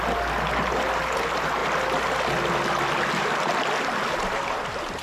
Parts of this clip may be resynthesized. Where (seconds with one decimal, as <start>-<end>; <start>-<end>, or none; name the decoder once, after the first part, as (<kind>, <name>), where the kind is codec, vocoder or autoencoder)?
none